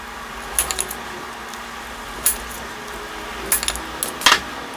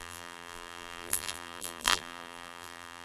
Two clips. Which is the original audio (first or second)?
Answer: first